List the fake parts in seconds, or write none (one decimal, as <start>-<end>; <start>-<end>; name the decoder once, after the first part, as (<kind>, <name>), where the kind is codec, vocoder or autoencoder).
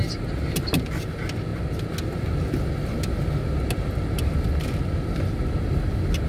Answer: none